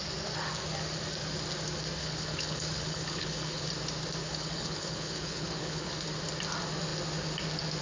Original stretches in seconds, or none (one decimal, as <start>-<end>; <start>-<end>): 0.0-2.0; 3.7-4.2; 5.9-7.8